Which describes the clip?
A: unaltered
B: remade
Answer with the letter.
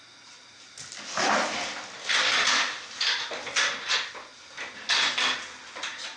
A